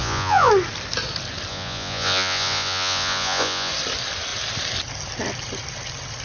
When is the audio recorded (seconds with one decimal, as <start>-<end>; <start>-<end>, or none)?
0.5-1.5; 3.7-6.2

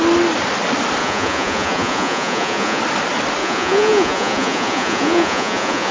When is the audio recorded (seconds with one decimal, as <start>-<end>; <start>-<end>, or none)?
0.0-1.0; 2.8-3.4

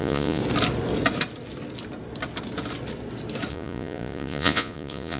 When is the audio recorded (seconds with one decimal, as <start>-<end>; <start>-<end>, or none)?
0.4-3.5

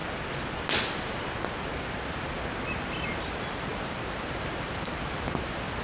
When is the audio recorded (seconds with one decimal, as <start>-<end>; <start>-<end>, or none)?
0.0-5.8